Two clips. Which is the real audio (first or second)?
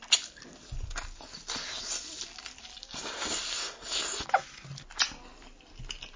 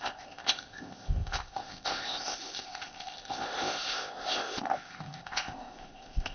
first